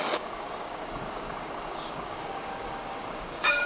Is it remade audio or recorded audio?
remade